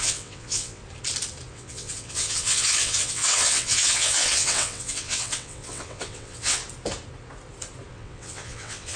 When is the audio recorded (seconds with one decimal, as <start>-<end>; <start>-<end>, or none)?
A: 0.8-1.5; 6.6-7.9